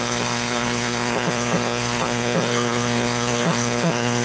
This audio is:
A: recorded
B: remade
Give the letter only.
B